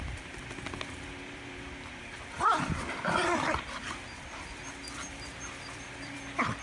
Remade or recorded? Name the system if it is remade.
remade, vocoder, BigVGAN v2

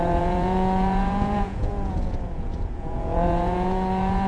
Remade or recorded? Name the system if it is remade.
remade, vocoder, Vocos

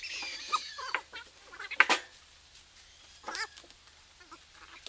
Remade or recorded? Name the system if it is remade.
recorded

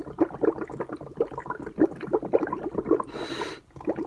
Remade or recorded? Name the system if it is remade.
recorded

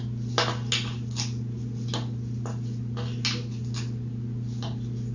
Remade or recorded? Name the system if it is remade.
recorded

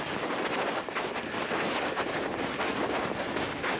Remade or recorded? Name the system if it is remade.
recorded